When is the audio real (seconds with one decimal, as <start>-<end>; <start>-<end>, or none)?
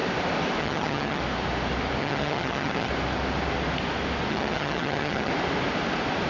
0.0-0.6; 1.2-2.0; 2.9-4.3; 5.3-6.3